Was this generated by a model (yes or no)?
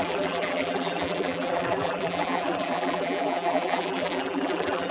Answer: yes